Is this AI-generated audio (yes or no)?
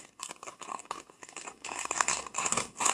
yes